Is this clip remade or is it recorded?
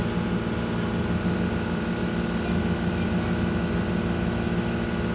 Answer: recorded